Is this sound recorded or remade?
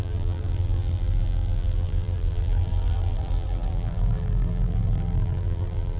remade